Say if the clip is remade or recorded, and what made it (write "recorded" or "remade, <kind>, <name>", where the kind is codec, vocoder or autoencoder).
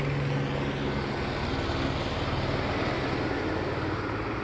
recorded